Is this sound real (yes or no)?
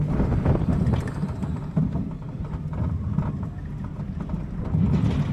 yes